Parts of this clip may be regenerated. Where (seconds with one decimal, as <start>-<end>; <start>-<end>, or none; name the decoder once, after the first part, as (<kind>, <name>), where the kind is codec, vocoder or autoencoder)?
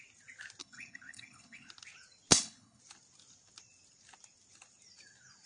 0.6-1.7 (codec, HILCodec); 2.3-2.8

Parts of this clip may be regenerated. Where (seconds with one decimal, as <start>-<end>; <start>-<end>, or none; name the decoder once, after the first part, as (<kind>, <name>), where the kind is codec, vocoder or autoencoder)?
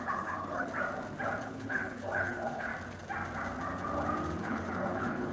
0.0-0.7 (codec, HILCodec); 1.4-2.7; 4.4-5.3